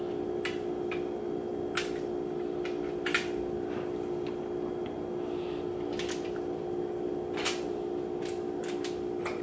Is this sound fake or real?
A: real